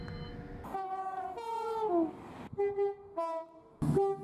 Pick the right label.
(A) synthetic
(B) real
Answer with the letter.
B